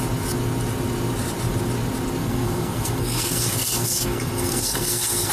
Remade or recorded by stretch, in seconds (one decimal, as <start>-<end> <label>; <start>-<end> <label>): 0.0-2.2 recorded; 2.2-5.3 remade